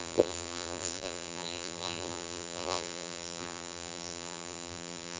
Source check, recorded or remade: remade